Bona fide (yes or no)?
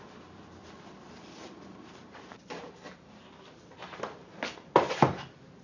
no